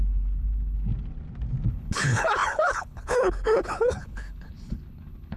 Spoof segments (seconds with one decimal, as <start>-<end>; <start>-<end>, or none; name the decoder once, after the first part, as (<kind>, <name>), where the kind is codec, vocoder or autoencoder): 0.0-0.9 (codec, HILCodec); 1.7-5.4